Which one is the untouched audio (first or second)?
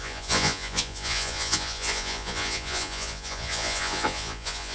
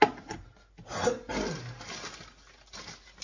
second